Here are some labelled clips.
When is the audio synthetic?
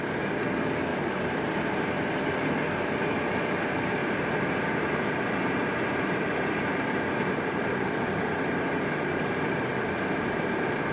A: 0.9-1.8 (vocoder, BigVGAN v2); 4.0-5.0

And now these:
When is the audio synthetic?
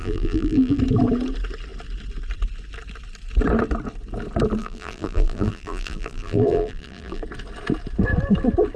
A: 0.0-0.8 (vocoder, BigVGAN v2); 4.6-7.2